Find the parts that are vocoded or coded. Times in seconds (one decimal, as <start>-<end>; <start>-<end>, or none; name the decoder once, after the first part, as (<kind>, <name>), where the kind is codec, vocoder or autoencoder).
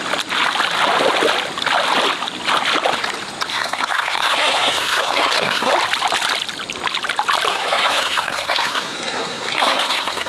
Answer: 3.5-5.7 (codec, SNAC); 7.5-10.3